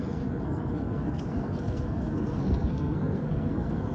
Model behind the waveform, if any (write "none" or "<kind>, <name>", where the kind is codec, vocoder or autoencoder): codec, SNAC